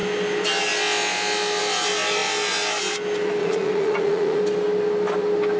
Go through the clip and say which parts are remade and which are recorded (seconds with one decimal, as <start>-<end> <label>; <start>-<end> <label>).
0.0-3.4 recorded; 3.4-4.4 remade; 4.4-5.6 recorded